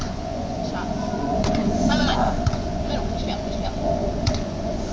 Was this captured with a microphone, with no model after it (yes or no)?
no